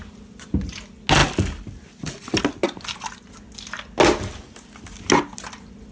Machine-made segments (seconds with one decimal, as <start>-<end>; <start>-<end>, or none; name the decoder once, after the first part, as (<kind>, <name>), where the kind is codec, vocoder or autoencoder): none